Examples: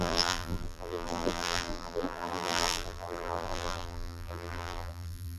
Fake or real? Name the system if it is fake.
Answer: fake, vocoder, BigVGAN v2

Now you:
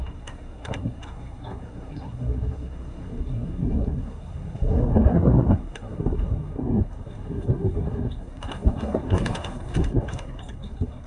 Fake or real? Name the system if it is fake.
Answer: fake, codec, SNAC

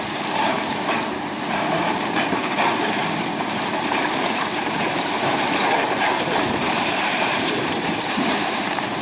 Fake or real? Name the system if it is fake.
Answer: fake, vocoder, BigVGAN v2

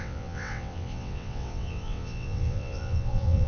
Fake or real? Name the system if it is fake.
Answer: fake, vocoder, WaveNeXt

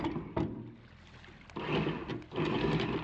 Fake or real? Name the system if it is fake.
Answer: real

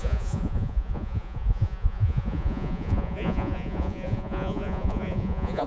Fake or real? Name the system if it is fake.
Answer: fake, vocoder, Vocos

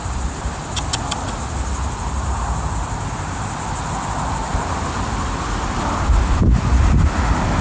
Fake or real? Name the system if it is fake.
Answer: real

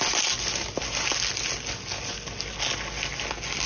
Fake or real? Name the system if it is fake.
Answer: real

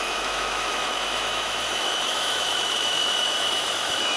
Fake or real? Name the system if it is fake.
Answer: fake, autoencoder, DAC-VAE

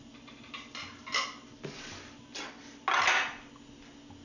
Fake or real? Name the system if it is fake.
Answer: real